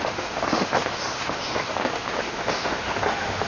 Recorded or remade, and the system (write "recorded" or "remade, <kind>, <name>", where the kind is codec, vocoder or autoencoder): remade, autoencoder, DAC-VAE